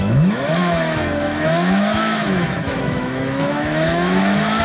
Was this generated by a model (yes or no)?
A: yes